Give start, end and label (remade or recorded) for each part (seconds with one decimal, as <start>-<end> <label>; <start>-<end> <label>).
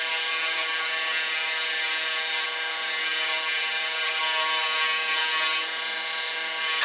0.0-6.8 recorded